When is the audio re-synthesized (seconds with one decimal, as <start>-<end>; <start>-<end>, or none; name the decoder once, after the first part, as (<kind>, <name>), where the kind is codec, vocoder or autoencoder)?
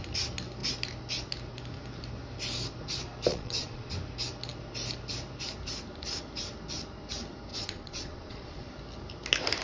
3.3-3.9 (vocoder, Vocos); 7.5-8.7